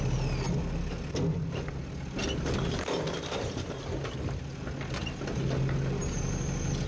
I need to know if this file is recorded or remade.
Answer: recorded